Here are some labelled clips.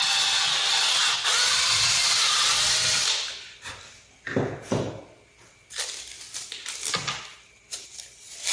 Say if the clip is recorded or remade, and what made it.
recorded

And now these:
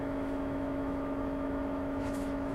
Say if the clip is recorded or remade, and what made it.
remade, autoencoder, DAC-VAE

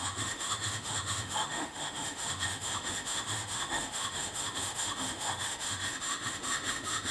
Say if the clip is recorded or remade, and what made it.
remade, autoencoder, DAC-VAE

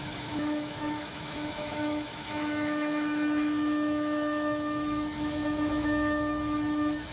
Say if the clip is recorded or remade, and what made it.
remade, autoencoder, DAC-VAE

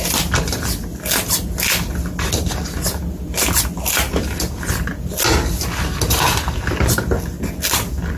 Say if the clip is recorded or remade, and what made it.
recorded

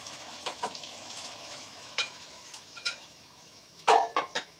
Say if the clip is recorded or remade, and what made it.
remade, autoencoder, DAC-VAE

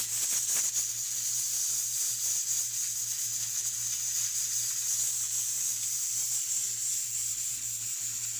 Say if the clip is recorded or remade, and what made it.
recorded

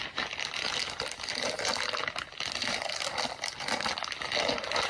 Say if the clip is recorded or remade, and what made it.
recorded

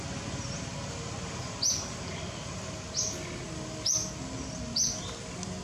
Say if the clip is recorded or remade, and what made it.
recorded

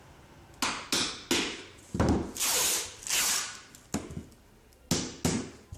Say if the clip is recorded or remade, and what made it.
recorded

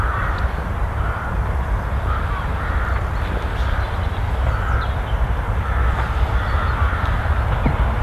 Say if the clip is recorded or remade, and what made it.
recorded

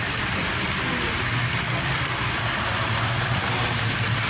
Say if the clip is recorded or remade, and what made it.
recorded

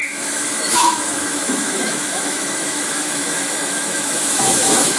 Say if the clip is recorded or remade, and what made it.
remade, autoencoder, DAC-VAE